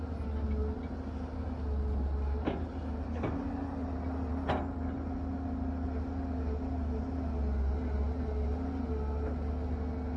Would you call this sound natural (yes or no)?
yes